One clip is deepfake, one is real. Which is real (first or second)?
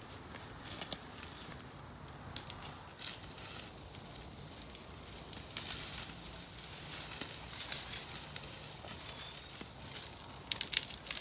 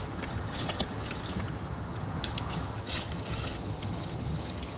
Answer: first